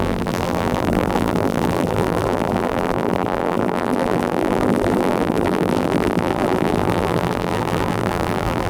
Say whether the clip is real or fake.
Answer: fake